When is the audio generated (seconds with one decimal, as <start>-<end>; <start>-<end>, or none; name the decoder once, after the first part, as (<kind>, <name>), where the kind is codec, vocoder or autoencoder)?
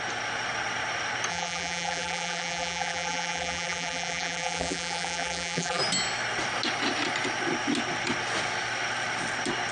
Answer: 1.3-5.8 (vocoder, BigVGAN v2)